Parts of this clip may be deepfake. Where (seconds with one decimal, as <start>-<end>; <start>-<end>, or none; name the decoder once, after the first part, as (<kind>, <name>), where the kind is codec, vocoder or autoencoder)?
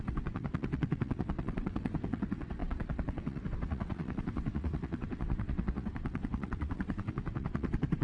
0.0-8.0 (vocoder, WaveNeXt)